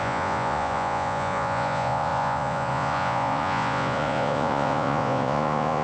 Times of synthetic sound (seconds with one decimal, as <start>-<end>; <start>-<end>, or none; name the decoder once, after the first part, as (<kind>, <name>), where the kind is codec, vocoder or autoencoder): 0.0-5.8 (vocoder, Vocos)